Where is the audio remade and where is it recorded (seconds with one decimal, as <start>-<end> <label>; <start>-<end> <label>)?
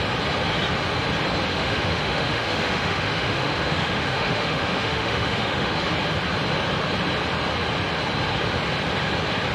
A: 0.0-1.5 recorded; 1.5-5.8 remade; 5.8-9.5 recorded